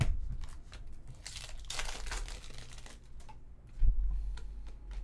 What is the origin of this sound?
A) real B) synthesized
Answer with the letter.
A